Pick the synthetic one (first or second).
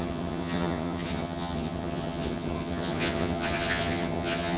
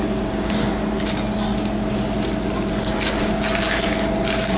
first